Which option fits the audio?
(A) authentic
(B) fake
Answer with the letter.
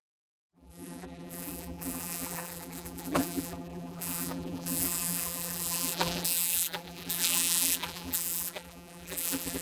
B